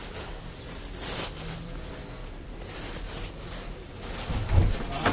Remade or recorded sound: recorded